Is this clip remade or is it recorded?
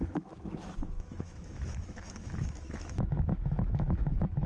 remade